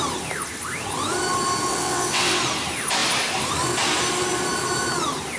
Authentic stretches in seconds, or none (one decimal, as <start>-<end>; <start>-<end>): 0.0-1.7; 2.4-5.4